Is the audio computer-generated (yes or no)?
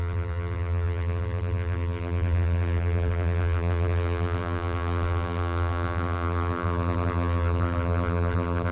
yes